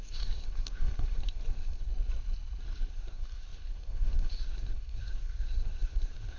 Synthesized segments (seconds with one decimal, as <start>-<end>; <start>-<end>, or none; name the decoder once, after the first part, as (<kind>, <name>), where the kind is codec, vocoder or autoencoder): 0.0-1.9 (codec, SNAC); 2.9-6.4